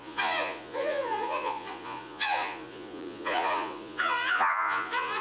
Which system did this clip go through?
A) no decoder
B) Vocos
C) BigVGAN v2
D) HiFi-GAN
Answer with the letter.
B